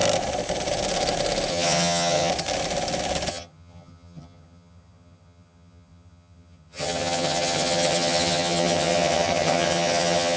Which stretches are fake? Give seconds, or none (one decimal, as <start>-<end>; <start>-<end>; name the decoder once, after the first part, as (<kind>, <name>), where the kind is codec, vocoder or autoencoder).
1.5-2.3 (vocoder, HiFi-GAN); 3.3-10.4